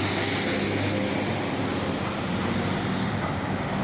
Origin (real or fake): real